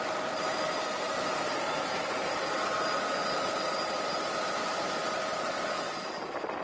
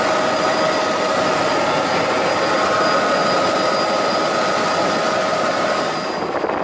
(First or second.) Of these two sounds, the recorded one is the second